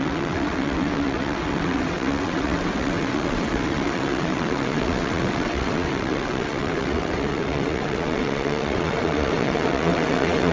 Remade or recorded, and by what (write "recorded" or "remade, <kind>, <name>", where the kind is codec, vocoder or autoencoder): remade, vocoder, WaveNeXt